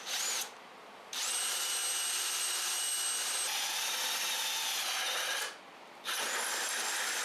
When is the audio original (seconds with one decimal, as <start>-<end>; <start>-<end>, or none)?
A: 0.0-7.2